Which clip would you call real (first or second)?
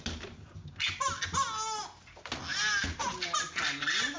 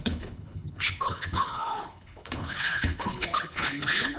first